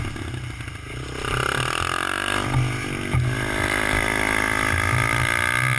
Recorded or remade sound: recorded